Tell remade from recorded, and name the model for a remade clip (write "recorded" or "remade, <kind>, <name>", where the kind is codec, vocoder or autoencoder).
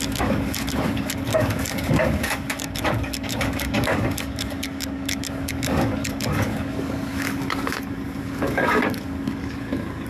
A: remade, codec, DAC